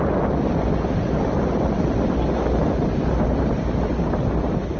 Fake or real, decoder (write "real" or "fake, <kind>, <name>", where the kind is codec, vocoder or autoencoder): real